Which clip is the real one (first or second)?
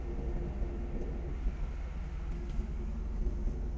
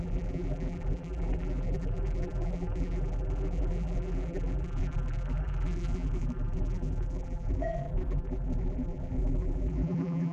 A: first